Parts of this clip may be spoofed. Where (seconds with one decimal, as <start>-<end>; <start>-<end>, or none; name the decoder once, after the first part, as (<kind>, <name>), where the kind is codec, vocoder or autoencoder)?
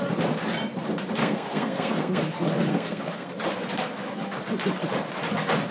1.2-2.2 (codec, SNAC); 2.7-3.3